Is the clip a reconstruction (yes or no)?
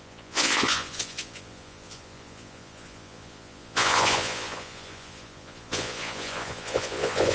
yes